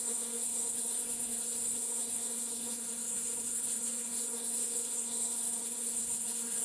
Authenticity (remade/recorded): remade